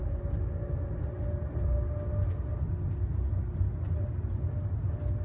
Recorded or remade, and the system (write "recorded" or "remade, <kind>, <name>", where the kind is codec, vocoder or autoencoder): recorded